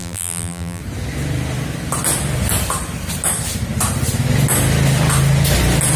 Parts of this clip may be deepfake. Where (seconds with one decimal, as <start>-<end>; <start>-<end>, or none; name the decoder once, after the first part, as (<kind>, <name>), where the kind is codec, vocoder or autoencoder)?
0.0-0.8 (vocoder, BigVGAN v2)